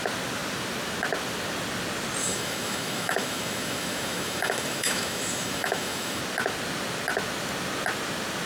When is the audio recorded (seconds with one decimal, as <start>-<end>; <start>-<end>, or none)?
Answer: 0.0-2.2; 6.2-8.5